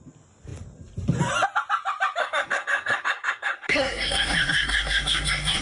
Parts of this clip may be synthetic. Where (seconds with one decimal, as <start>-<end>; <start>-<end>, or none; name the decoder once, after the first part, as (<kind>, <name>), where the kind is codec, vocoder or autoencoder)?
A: 2.2-5.6 (codec, SNAC)